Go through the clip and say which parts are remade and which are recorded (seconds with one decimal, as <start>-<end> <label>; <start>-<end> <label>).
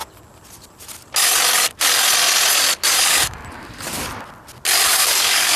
0.0-3.0 recorded; 3.0-3.4 remade; 3.4-4.9 recorded; 4.9-5.6 remade